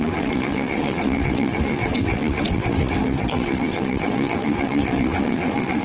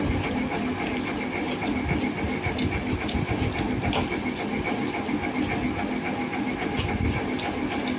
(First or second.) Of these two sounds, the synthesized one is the first